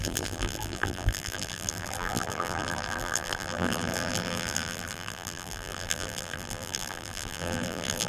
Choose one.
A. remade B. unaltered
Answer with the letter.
A